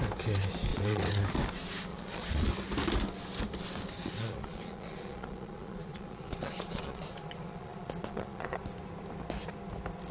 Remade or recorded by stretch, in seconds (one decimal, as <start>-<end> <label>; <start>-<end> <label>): 0.0-0.7 recorded; 0.7-1.2 remade; 1.2-1.9 recorded; 1.9-2.5 remade; 2.5-4.0 recorded; 4.0-8.6 remade; 8.6-10.1 recorded